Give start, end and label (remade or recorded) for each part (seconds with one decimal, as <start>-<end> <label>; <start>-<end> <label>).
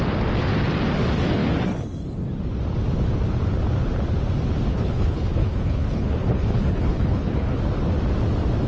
0.0-4.7 recorded; 4.7-7.6 remade; 7.6-8.7 recorded